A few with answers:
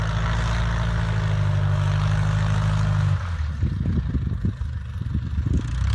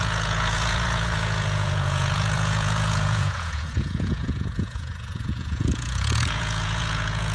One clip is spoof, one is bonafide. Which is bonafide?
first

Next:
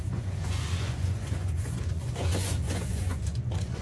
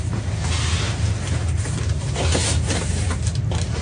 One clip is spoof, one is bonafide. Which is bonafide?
second